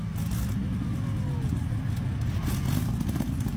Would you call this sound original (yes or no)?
yes